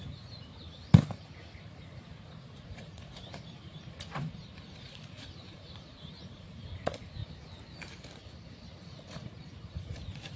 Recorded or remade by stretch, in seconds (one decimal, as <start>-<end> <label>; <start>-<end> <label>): 0.0-0.5 remade; 0.5-1.6 recorded; 1.6-7.2 remade; 7.2-8.7 recorded; 8.7-10.4 remade